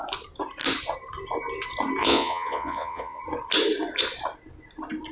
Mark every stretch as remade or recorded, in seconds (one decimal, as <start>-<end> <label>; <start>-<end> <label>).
0.0-2.0 recorded; 2.0-3.2 remade; 3.2-5.1 recorded